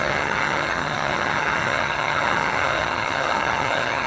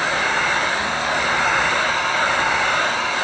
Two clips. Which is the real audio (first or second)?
second